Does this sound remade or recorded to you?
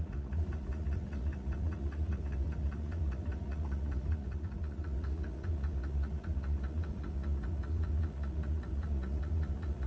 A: remade